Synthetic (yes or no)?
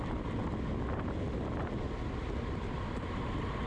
no